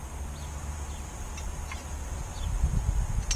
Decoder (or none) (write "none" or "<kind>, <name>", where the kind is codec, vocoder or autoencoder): none